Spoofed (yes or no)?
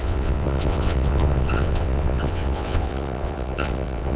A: yes